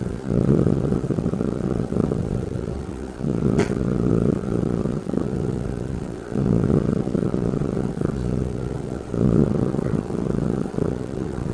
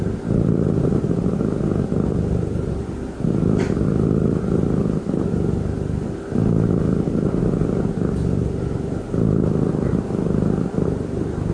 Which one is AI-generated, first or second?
first